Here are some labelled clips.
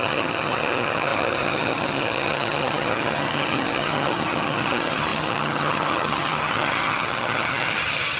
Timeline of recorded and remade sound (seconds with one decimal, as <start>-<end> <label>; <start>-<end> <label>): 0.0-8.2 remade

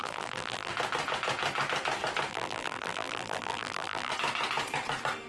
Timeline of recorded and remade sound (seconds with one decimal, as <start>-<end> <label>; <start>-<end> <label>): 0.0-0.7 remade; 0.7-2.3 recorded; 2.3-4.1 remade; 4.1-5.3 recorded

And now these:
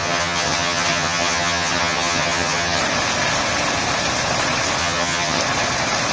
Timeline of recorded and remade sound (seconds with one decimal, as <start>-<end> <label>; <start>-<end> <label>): 0.0-2.8 remade; 2.8-4.8 recorded; 4.8-5.4 remade; 5.4-6.1 recorded